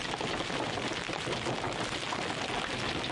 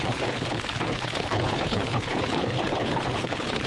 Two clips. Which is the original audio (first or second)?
first